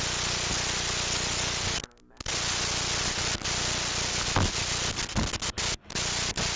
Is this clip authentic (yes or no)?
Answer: yes